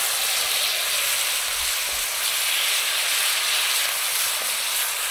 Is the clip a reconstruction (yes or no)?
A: no